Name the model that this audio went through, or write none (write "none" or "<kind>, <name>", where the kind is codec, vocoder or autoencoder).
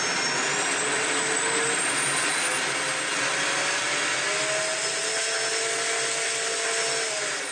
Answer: none